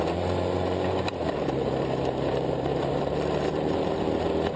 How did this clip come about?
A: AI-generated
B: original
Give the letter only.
A